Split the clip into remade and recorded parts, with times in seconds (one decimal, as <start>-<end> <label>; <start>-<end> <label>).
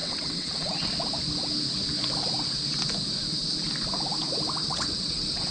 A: 0.0-0.9 remade; 0.9-4.6 recorded; 4.6-5.5 remade